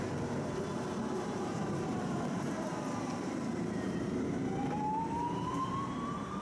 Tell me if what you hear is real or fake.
fake